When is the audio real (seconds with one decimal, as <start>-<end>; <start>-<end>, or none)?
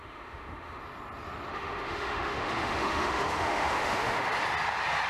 0.8-1.5; 4.3-5.1